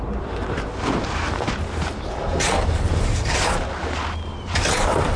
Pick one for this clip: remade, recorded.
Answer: remade